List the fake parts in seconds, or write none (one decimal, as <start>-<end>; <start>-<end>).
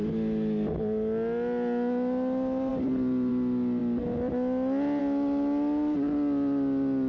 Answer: 2.7-3.3